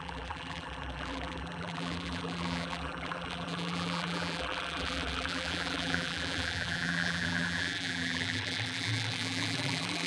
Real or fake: fake